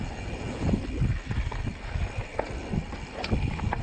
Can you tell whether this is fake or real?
real